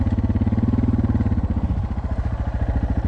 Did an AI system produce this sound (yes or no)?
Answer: no